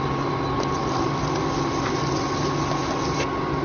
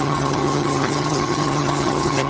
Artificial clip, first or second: second